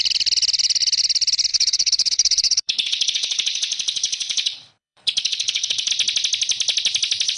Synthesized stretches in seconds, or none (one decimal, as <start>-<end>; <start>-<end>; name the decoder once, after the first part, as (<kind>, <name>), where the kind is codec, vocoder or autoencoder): 1.5-5.9 (codec, HILCodec)